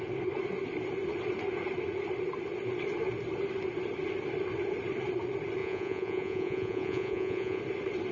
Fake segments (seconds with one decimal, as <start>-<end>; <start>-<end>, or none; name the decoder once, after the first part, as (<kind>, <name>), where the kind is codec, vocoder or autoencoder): 5.6-7.6 (vocoder, Vocos)